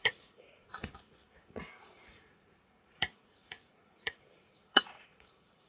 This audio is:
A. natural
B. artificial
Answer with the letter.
B